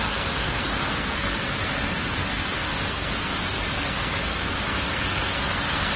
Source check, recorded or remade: remade